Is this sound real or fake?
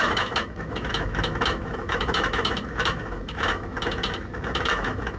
fake